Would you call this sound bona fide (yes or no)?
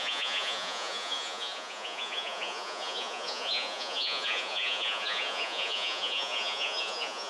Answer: no